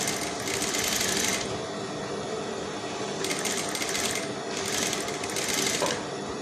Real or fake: real